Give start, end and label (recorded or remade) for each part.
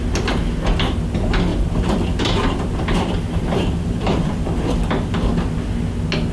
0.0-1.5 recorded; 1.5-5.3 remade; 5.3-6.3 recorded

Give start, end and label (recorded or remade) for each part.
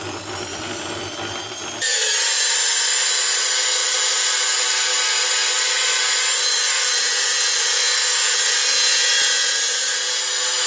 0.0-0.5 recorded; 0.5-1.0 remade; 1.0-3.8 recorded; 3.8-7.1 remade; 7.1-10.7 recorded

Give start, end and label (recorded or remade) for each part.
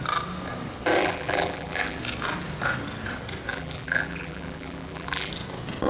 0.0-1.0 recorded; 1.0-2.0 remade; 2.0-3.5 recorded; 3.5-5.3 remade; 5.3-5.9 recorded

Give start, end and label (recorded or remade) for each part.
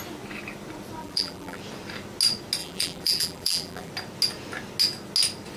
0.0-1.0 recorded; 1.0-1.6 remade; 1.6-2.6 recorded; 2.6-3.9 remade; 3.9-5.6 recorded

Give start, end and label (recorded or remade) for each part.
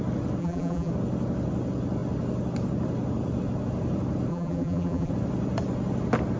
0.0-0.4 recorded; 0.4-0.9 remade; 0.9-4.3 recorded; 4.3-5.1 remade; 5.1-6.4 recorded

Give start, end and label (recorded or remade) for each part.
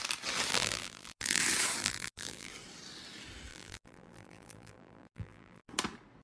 0.0-0.5 recorded; 0.5-1.4 remade; 1.4-1.8 recorded; 1.8-2.5 remade; 2.5-3.5 recorded; 3.5-5.7 remade; 5.7-6.2 recorded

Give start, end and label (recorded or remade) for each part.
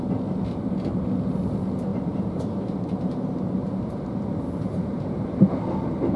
0.0-1.9 recorded; 1.9-5.1 remade; 5.1-6.2 recorded